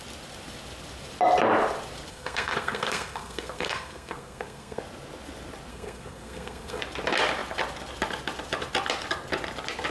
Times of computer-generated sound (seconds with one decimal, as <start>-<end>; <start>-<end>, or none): 2.1-4.8; 5.7-6.8